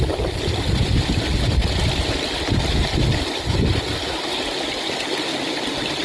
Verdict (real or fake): real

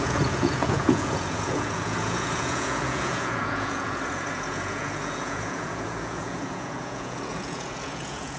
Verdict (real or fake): fake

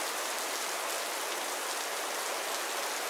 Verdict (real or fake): real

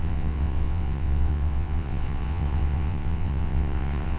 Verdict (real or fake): fake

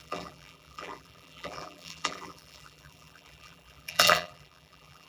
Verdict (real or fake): fake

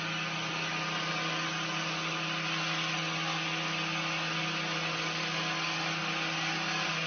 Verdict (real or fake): real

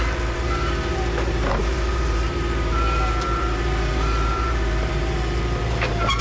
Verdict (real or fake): fake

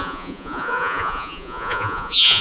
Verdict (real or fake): fake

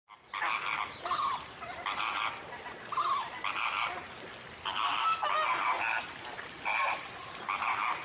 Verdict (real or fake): real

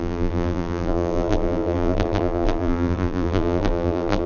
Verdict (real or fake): fake